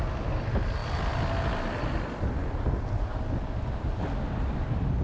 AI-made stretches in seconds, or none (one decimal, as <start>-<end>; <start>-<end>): none